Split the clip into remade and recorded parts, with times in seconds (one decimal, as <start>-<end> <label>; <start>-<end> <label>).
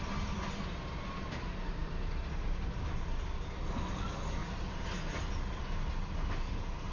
0.0-6.9 recorded